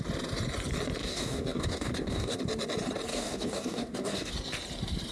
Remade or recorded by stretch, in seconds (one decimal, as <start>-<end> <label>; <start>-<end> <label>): 0.0-1.0 recorded; 1.0-2.4 remade; 2.4-3.1 recorded; 3.1-4.3 remade; 4.3-5.1 recorded